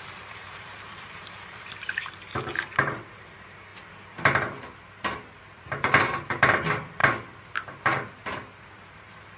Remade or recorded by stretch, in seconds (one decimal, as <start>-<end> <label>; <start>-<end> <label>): 0.0-3.7 remade; 3.7-5.4 recorded; 5.4-7.0 remade; 7.0-8.6 recorded; 8.6-9.4 remade